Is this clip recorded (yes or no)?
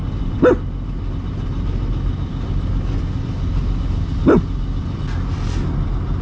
yes